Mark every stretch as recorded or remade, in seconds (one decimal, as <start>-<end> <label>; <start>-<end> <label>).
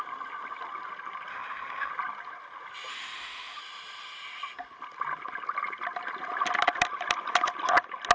0.0-1.3 recorded; 1.3-1.9 remade; 1.9-2.9 recorded; 2.9-3.6 remade; 3.6-8.1 recorded